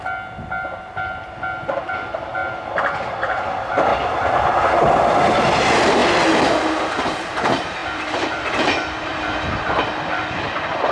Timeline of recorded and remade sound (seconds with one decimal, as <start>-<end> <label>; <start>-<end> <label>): 0.0-3.9 remade; 3.9-4.6 recorded; 4.6-6.0 remade; 6.0-6.8 recorded; 6.8-10.9 remade